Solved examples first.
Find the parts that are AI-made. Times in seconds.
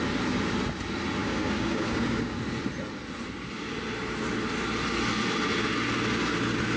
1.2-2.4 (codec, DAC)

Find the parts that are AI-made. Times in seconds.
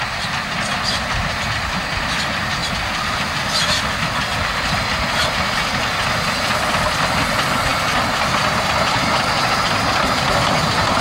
none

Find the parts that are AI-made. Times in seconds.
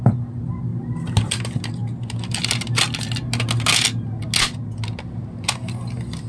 none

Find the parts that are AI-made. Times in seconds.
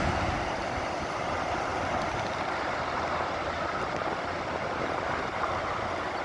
none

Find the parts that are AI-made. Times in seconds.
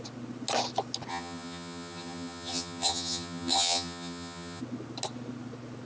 1.1-4.6 (vocoder, HiFi-GAN)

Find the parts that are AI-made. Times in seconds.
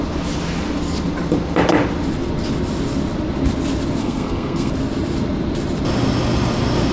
4.0-4.7 (codec, SNAC)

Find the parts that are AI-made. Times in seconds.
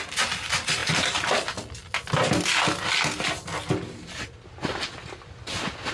none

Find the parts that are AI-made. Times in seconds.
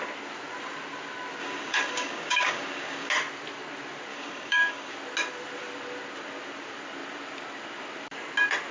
1.4-3.1 (codec, DAC); 4.1-4.9